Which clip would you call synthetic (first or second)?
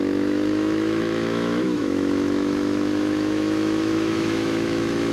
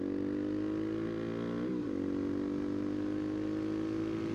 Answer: first